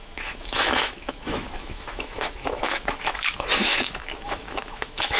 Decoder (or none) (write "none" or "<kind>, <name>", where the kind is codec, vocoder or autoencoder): autoencoder, DAC-VAE